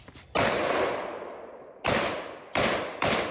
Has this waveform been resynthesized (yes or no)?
no